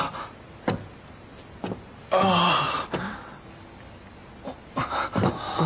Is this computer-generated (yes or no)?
no